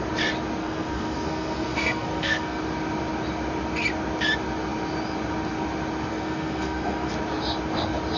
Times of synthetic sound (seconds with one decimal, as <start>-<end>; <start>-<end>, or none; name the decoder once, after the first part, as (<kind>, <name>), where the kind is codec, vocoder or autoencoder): 0.6-2.6 (codec, SNAC); 6.1-7.1